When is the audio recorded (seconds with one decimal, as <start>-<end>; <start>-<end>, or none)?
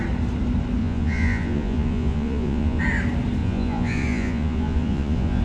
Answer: 0.0-0.8; 2.8-3.4